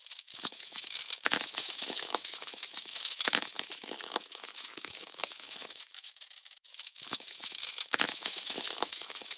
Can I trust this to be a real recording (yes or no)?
no